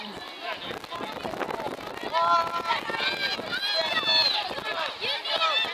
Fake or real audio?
real